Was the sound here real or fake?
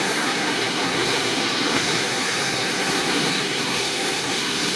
fake